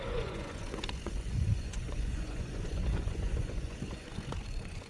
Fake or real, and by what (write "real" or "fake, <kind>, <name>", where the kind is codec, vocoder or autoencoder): fake, vocoder, Vocos